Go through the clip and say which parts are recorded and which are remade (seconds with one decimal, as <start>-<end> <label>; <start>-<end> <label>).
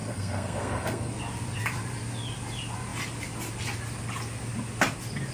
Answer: 0.0-1.1 remade; 1.1-5.3 recorded